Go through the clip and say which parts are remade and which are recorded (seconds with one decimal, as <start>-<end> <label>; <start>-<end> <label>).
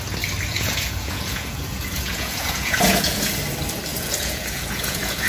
0.0-0.5 recorded; 0.5-3.4 remade; 3.4-3.9 recorded; 3.9-5.3 remade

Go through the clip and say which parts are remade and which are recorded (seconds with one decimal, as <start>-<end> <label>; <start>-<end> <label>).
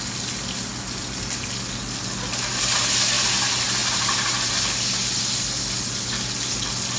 0.0-7.0 recorded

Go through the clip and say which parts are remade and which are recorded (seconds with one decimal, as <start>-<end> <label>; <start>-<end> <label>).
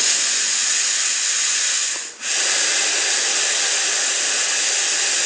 0.0-1.8 remade; 1.8-5.3 recorded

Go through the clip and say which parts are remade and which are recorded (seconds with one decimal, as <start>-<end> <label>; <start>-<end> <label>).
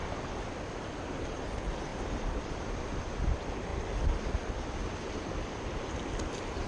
0.0-1.3 recorded; 1.3-3.7 remade; 3.7-6.7 recorded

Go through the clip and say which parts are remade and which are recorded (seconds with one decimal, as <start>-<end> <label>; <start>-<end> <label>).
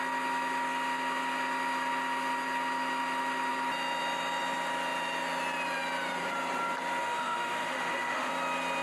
0.0-7.0 recorded; 7.0-8.3 remade; 8.3-8.8 recorded